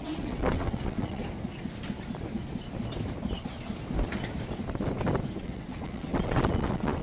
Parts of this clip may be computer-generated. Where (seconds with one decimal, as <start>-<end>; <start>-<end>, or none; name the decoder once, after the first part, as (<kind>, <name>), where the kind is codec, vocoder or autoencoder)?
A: 0.0-1.2 (vocoder, WaveNeXt); 5.4-7.0